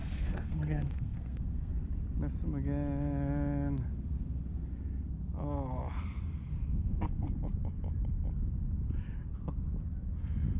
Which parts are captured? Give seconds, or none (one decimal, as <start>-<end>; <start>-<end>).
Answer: 1.7-6.7; 7.4-10.6